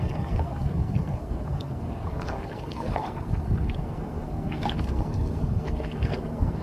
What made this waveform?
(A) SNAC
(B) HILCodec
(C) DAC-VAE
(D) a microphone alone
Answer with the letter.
A